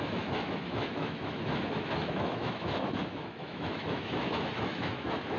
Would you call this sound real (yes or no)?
no